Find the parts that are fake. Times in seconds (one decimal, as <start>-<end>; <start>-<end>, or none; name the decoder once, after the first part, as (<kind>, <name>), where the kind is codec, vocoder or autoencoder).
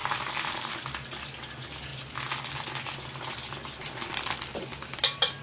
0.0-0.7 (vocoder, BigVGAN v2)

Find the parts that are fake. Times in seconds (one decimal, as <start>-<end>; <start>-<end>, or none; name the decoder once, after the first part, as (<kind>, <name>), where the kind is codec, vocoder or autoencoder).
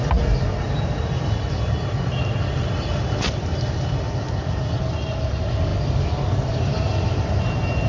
none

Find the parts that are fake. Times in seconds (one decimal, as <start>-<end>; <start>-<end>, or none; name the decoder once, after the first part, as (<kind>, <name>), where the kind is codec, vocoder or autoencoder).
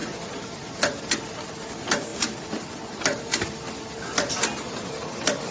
none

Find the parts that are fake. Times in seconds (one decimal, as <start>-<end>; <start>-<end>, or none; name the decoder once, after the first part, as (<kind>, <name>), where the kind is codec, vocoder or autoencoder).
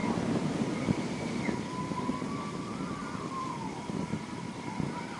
3.0-3.5 (vocoder, BigVGAN v2)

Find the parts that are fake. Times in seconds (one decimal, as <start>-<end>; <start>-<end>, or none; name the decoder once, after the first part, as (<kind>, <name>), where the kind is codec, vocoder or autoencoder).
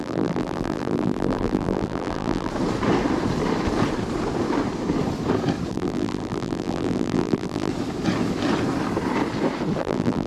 0.0-2.5 (vocoder, BigVGAN v2); 5.7-7.7; 9.8-10.3